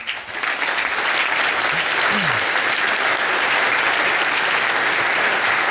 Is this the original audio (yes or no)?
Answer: yes